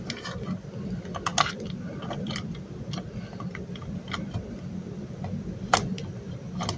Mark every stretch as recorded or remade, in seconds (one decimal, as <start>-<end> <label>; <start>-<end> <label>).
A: 0.0-6.8 recorded